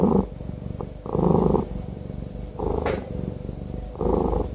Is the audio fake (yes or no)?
no